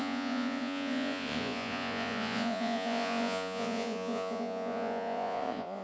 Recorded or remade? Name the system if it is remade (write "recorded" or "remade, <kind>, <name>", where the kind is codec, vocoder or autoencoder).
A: remade, vocoder, Vocos